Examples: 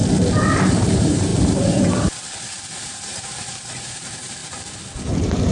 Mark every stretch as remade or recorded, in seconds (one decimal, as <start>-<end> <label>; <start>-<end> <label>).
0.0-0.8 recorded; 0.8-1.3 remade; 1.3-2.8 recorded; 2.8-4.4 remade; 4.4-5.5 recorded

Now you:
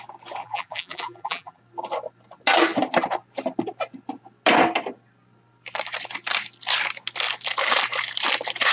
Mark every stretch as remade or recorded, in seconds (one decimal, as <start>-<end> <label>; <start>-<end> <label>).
0.0-0.4 recorded; 0.4-1.6 remade; 1.6-8.7 recorded

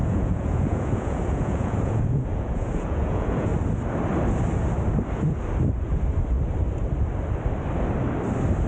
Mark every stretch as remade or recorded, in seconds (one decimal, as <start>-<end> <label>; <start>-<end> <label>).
0.0-3.5 remade; 3.5-8.7 recorded

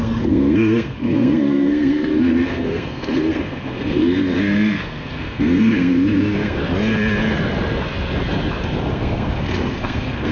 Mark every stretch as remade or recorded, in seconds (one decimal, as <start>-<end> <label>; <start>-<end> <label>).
0.0-6.6 remade; 6.6-8.9 recorded; 8.9-10.3 remade